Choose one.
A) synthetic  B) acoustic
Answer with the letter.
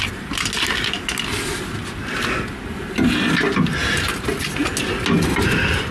B